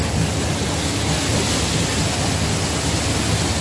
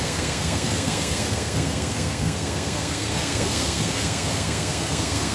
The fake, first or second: second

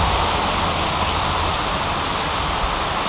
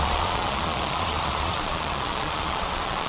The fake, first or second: second